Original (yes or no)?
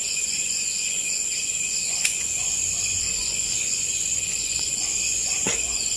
no